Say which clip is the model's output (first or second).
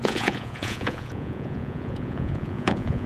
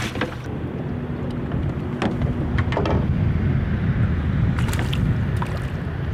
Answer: first